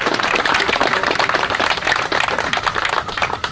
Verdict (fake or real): fake